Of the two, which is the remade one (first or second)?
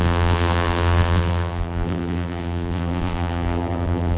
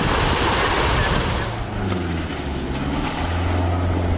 first